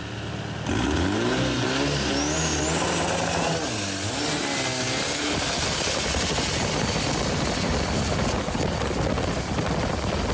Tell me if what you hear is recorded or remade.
recorded